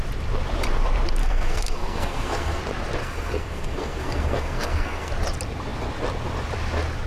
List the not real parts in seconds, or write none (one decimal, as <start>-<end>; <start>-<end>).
1.2-2.6; 3.0-5.1